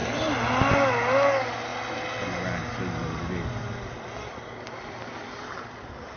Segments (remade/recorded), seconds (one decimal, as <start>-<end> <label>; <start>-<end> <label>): 0.0-6.2 recorded